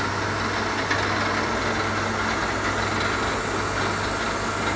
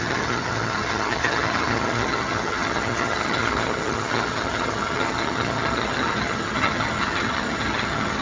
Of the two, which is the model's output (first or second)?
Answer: second